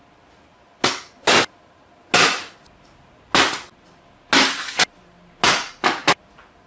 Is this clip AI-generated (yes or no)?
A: no